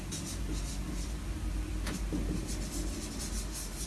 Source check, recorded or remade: recorded